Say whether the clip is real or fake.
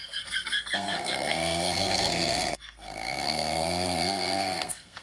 fake